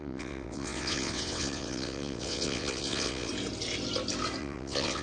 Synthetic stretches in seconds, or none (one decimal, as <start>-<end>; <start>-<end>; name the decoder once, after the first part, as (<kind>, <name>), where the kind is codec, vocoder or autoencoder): 0.0-3.3 (vocoder, WaveNeXt); 4.4-5.0